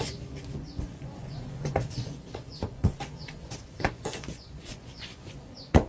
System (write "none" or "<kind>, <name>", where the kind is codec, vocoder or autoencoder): vocoder, Vocos